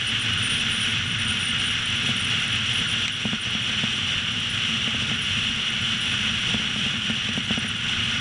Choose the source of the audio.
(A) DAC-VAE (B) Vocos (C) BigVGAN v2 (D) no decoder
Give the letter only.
D